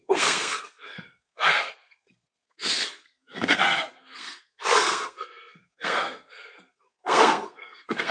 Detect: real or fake fake